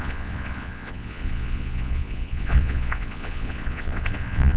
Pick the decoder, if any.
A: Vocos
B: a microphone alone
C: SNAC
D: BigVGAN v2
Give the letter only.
A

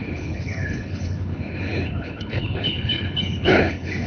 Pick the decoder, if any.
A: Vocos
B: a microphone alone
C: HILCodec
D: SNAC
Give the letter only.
C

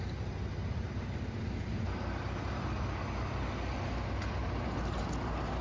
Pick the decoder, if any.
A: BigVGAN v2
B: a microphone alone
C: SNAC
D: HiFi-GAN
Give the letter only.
B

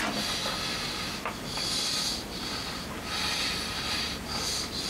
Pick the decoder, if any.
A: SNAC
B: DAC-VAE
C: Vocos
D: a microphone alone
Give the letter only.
D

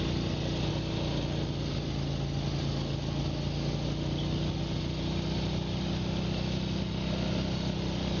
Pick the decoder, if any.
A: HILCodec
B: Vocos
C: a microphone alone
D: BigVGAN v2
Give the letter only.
C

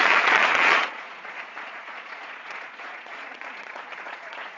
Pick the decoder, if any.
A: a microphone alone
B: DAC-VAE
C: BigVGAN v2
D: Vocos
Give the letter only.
D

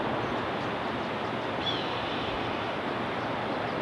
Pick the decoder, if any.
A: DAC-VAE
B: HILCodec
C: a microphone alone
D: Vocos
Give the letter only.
C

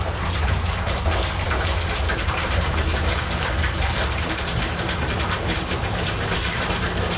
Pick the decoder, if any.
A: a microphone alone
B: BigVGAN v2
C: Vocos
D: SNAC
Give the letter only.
B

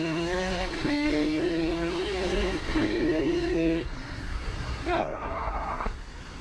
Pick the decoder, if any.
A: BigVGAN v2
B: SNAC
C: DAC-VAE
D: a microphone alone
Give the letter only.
B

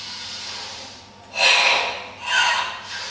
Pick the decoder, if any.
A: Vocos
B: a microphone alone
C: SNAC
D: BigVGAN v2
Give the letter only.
B